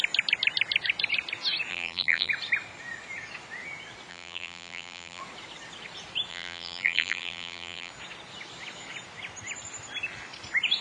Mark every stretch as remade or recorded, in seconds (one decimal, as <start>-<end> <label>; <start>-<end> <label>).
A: 0.0-1.7 recorded; 1.7-2.3 remade; 2.3-4.1 recorded; 4.1-5.2 remade; 5.2-6.3 recorded; 6.3-7.9 remade; 7.9-10.8 recorded